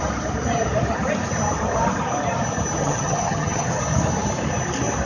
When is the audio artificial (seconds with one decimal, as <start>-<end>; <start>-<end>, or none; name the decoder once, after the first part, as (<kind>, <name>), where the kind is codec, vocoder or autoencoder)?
2.8-3.8 (vocoder, HiFi-GAN)